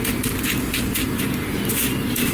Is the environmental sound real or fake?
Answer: real